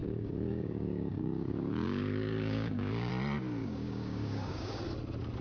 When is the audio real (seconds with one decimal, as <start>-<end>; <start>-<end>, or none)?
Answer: 3.1-3.6; 4.8-5.4